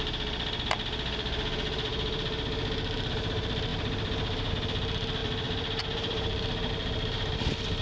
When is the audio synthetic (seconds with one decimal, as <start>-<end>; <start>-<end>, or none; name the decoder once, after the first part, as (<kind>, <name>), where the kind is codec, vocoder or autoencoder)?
3.7-4.5 (vocoder, BigVGAN v2); 5.2-6.7